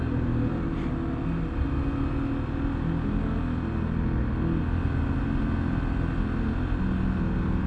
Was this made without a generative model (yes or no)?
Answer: yes